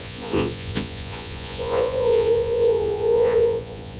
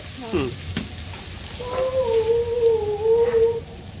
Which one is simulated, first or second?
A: first